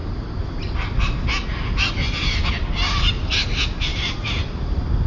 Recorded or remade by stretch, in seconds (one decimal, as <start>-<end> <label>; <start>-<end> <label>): 0.0-5.1 recorded